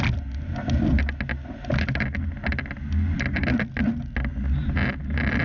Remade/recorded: recorded